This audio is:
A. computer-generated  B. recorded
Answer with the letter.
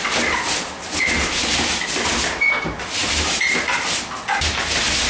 B